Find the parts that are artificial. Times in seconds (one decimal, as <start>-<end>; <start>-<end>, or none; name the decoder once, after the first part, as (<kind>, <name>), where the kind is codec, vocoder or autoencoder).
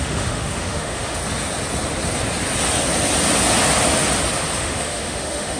0.0-1.2 (autoencoder, DAC-VAE); 4.6-5.6